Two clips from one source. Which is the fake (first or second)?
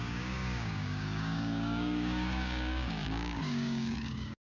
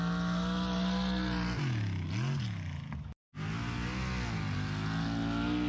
first